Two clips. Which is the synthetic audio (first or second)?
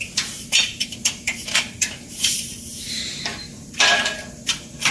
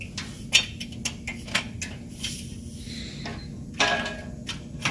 first